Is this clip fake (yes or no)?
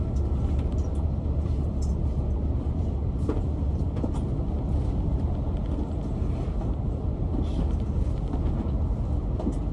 no